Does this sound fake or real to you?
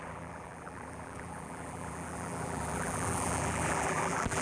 fake